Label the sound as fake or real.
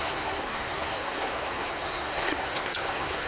fake